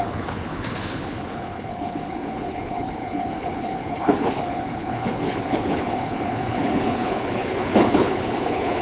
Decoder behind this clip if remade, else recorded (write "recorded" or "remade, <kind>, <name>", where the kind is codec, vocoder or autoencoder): remade, codec, HILCodec